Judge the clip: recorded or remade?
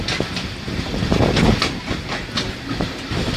recorded